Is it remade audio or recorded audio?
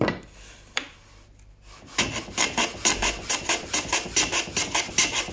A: recorded